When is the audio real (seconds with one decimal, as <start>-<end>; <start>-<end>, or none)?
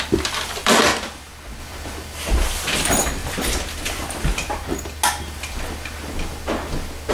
0.9-1.6; 3.2-7.1